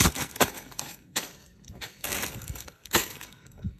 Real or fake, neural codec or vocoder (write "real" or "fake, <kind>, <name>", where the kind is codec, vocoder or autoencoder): fake, codec, SNAC